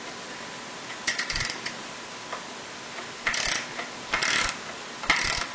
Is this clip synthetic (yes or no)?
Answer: yes